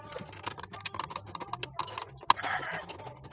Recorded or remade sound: recorded